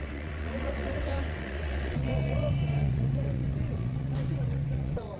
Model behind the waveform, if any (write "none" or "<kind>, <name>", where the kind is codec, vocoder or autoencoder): vocoder, WaveNeXt